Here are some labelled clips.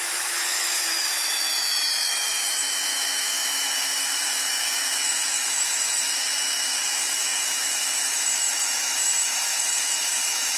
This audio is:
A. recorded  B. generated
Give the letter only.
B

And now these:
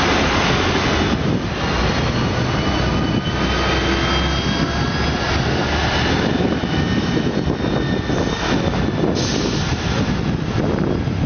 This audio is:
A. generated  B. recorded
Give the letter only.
B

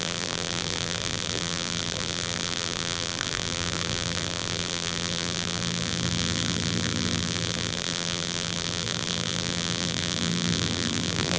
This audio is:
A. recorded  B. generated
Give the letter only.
B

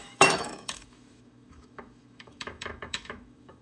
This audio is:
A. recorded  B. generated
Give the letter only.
B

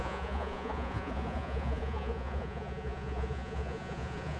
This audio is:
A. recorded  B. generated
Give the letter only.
B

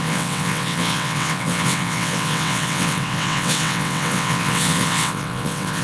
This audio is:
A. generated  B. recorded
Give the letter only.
A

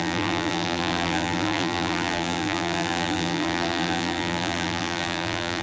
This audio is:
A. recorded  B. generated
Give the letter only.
B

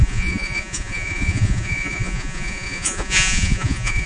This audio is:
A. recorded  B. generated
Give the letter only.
B